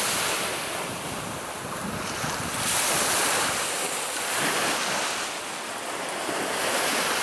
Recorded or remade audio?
remade